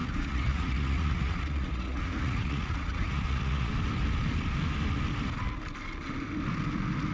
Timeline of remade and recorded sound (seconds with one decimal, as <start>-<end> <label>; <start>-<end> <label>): 0.0-3.7 remade; 3.7-7.1 recorded

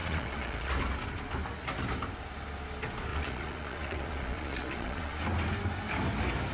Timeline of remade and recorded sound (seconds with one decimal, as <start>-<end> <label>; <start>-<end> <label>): 0.0-0.7 remade; 0.7-3.1 recorded; 3.1-5.2 remade; 5.2-6.5 recorded